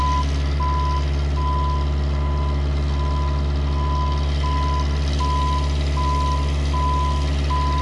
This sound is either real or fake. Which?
real